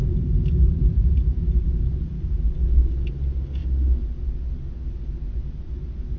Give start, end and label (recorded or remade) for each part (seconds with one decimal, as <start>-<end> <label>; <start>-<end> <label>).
0.0-1.4 remade; 1.4-2.6 recorded; 2.6-3.1 remade; 3.1-6.2 recorded